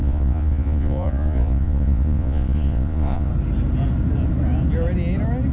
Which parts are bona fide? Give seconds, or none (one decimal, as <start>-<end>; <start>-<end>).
3.3-5.5